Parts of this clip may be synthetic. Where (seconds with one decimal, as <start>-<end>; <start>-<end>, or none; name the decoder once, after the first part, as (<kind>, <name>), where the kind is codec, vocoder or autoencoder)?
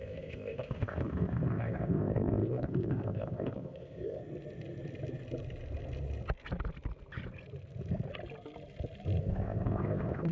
0.0-4.2 (codec, ZipCodec); 9.2-10.3